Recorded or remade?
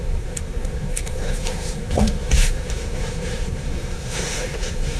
remade